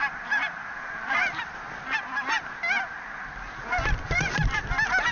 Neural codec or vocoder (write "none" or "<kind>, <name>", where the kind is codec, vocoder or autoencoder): none